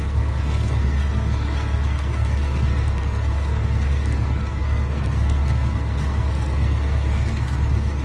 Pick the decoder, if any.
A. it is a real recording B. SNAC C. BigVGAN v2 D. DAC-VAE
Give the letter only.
B